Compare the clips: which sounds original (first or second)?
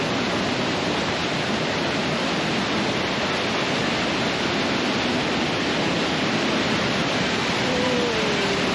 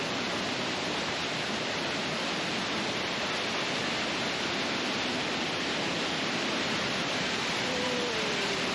first